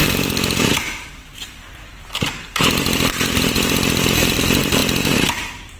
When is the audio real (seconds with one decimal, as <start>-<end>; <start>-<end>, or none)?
none